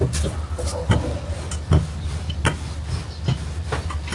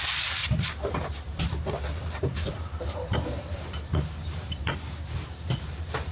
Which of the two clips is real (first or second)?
first